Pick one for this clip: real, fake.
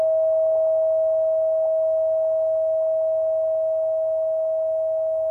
real